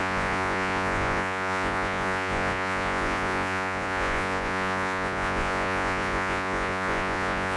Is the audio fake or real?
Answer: fake